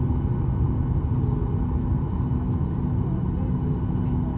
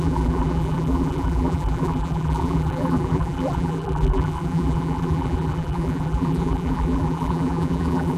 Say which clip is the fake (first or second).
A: second